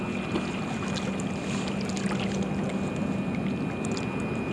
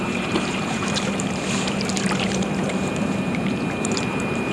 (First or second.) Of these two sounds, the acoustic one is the first